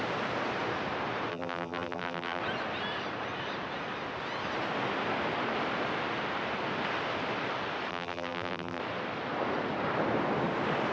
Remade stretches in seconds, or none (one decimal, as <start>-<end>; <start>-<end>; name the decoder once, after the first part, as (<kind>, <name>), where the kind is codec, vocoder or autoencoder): 1.3-2.4 (vocoder, BigVGAN v2); 7.9-8.8